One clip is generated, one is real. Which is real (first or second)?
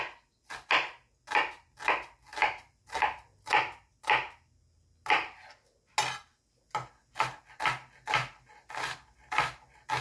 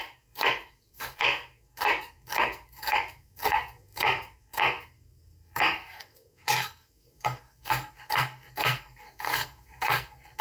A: first